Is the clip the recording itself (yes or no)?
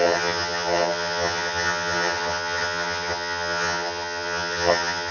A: no